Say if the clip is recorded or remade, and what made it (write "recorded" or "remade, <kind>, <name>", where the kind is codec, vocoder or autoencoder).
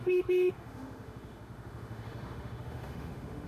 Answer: remade, autoencoder, DAC-VAE